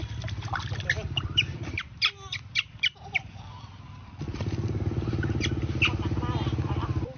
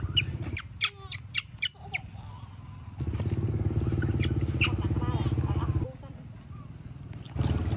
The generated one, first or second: first